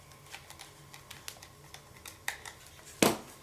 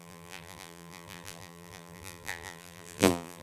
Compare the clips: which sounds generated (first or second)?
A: second